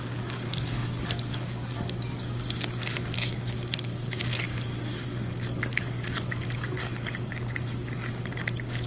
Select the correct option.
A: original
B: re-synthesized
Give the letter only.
B